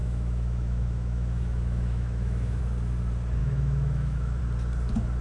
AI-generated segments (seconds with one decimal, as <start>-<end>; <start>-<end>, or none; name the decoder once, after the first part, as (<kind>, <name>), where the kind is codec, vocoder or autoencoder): 0.0-2.6 (autoencoder, DAC-VAE); 3.4-4.4